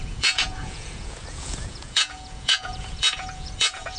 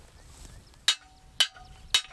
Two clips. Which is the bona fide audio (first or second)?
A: second